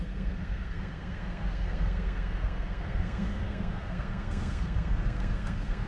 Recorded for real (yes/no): no